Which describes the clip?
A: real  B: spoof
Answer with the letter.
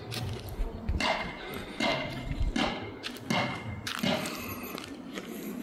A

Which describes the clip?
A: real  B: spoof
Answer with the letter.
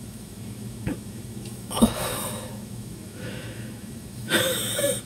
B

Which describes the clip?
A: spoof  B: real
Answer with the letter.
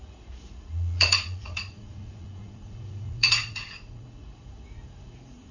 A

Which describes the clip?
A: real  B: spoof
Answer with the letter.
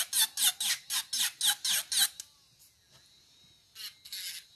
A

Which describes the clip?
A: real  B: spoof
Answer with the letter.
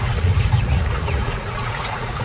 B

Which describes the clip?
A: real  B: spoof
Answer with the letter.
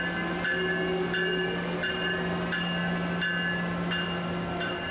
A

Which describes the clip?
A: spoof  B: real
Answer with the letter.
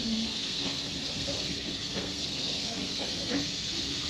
A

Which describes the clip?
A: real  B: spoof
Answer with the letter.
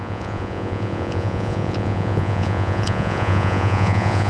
B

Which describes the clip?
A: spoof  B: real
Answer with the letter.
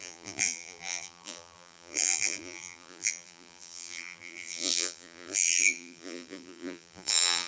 A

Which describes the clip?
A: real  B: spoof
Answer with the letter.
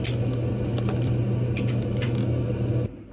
A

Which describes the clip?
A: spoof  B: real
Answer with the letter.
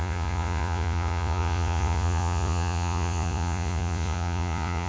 A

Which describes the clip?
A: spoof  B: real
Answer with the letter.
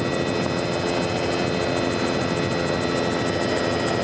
B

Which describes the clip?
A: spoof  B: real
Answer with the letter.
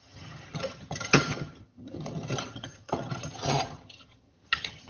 A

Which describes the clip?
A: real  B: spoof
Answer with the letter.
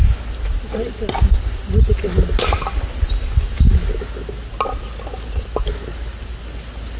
A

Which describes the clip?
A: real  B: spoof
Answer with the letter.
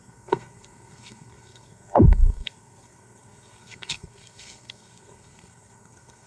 B